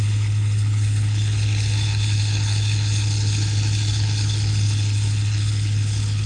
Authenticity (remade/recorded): remade